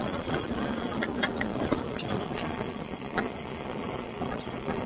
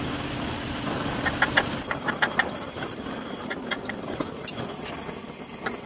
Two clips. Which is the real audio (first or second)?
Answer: second